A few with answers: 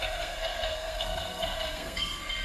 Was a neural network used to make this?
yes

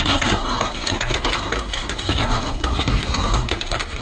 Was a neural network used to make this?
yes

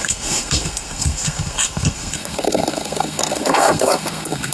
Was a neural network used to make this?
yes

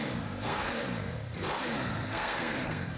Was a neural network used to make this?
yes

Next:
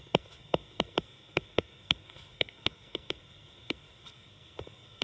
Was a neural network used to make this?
yes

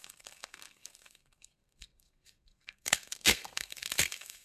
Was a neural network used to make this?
yes